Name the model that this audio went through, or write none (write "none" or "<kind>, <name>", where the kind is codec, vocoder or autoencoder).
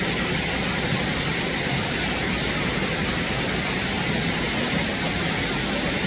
none